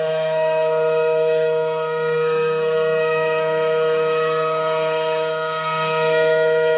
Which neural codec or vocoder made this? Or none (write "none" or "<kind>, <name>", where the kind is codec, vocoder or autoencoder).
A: codec, SNAC